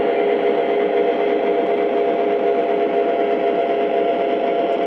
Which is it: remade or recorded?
recorded